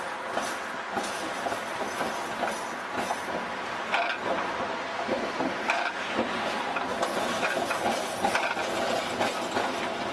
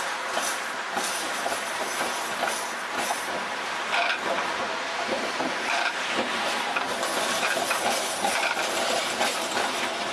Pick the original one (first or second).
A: first